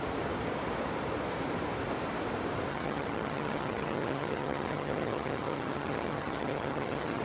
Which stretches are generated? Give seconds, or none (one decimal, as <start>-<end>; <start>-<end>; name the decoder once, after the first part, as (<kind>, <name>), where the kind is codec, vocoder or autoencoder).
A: 2.7-7.2 (vocoder, HiFi-GAN)